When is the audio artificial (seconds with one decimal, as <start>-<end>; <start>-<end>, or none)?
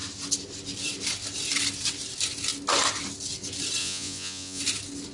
3.8-4.6